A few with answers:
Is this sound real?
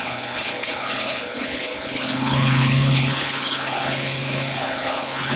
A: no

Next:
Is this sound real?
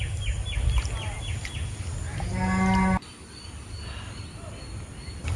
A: yes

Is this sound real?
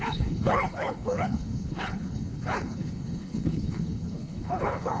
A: no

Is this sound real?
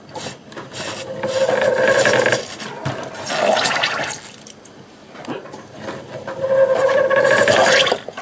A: yes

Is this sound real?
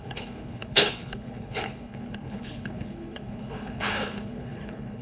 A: no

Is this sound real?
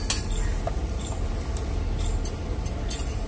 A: yes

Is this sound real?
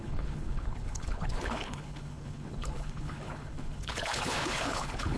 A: no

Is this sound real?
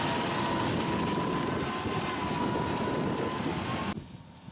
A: yes